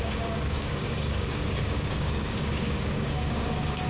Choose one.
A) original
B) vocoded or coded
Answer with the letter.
B